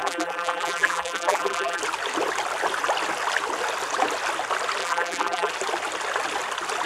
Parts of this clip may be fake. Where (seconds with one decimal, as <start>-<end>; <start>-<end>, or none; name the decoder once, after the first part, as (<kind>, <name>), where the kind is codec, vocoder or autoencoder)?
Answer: 0.0-1.8 (vocoder, BigVGAN v2); 4.8-5.5